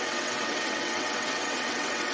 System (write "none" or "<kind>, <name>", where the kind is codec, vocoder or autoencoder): vocoder, WaveNeXt